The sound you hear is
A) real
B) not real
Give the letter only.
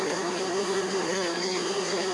B